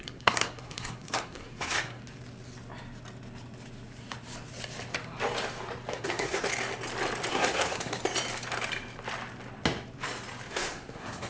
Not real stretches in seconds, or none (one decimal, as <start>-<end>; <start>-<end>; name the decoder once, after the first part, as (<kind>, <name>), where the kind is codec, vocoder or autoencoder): 0.0-2.0 (codec, SNAC); 5.9-6.5; 7.3-8.0; 10.5-11.3